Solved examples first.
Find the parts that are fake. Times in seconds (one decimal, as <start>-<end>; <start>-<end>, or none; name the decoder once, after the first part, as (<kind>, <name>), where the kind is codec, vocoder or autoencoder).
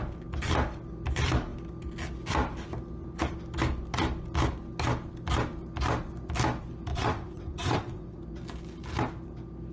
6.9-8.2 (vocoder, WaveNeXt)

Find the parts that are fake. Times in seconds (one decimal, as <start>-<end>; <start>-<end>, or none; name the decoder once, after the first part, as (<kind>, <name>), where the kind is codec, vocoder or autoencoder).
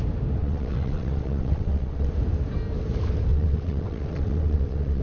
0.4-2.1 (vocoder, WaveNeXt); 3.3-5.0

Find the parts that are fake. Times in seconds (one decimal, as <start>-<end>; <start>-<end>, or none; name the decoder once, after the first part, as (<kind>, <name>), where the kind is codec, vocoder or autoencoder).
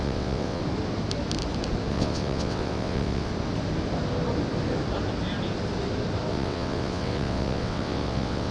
0.0-0.6 (vocoder, WaveNeXt); 1.9-3.3; 6.3-8.5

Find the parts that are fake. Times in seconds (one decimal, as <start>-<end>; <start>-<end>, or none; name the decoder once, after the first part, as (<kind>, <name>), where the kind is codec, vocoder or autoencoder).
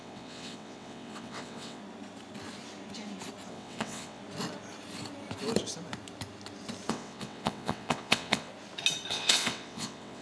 0.0-1.8 (vocoder, WaveNeXt); 3.5-4.2; 6.9-8.5; 9.1-10.2